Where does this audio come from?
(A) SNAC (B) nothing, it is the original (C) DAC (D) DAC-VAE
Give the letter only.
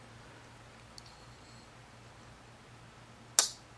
B